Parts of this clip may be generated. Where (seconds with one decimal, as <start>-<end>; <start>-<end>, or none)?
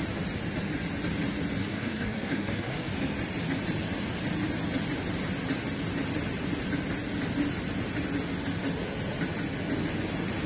1.6-2.9